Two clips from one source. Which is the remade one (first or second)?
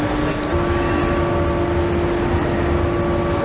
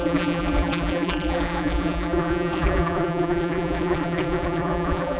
second